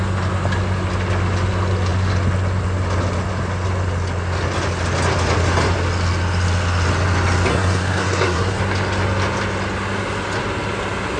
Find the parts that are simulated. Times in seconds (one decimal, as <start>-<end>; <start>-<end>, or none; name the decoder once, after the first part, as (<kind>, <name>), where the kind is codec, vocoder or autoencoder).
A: 7.5-8.6 (codec, SNAC)